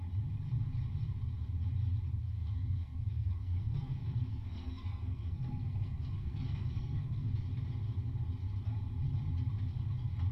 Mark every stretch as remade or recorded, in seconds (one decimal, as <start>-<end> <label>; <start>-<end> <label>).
0.0-2.2 recorded; 2.2-7.3 remade; 7.3-10.3 recorded